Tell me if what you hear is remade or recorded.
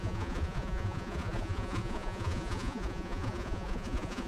remade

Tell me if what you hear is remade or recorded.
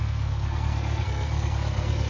remade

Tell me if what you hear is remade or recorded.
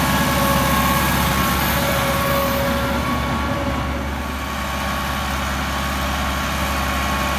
recorded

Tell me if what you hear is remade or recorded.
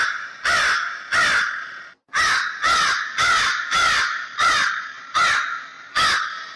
recorded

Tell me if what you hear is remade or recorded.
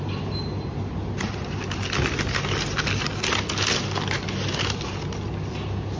recorded